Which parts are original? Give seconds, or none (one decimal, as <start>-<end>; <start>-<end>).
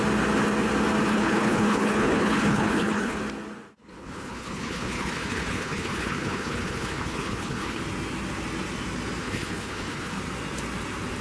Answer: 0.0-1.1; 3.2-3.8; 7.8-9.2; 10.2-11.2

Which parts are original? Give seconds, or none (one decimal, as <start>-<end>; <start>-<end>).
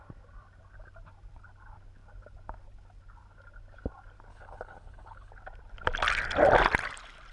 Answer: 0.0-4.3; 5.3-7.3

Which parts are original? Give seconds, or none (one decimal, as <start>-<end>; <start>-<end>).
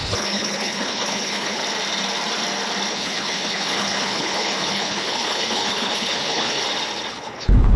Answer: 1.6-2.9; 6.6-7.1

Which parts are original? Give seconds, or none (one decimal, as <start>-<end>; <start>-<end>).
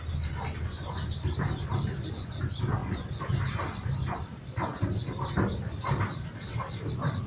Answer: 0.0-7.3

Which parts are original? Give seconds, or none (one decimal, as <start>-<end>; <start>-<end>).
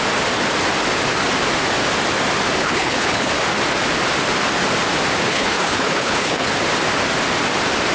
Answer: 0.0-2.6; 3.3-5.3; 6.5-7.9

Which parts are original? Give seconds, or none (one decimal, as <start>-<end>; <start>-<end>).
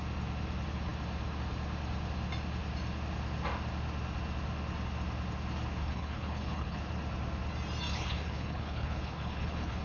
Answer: 0.0-5.8; 6.8-7.9